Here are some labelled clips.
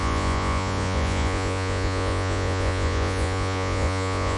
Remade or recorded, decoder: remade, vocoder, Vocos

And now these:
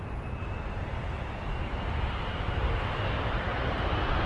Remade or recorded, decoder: recorded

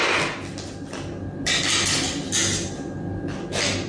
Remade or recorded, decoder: recorded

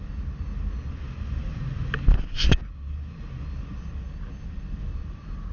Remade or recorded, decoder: recorded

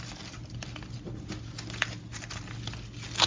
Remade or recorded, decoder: recorded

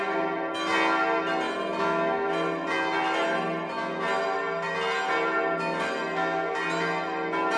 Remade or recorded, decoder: recorded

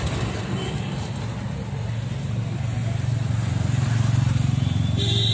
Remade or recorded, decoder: recorded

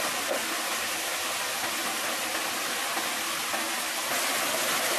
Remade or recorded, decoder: recorded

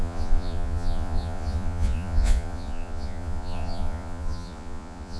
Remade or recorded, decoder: remade, vocoder, Vocos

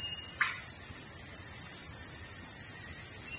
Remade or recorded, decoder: recorded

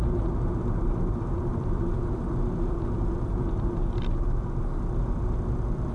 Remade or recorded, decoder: recorded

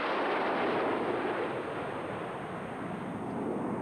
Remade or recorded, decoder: recorded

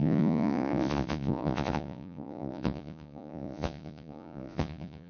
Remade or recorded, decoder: remade, vocoder, Vocos